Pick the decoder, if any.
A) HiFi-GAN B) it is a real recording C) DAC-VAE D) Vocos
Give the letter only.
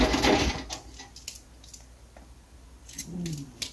B